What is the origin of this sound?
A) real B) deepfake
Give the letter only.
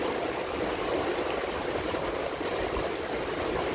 A